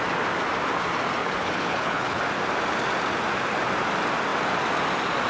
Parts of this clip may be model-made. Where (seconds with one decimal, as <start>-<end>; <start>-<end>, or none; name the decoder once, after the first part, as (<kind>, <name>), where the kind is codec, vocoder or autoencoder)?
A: 1.2-2.2 (codec, HILCodec)